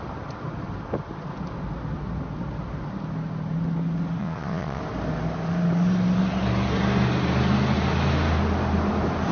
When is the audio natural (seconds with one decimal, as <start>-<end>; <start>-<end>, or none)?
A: 0.0-4.2; 4.8-9.3